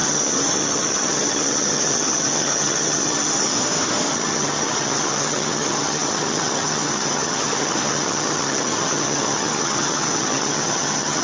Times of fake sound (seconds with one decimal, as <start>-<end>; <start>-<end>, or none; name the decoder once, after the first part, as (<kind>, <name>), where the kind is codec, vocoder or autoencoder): 0.0-3.5 (vocoder, HiFi-GAN); 4.1-11.2